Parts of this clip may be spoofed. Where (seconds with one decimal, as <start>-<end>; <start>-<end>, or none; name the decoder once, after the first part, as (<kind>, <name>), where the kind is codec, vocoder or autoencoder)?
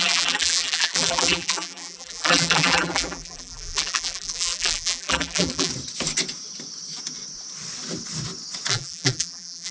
0.0-5.7 (vocoder, BigVGAN v2); 8.7-9.7